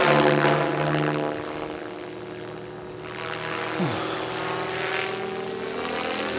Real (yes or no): yes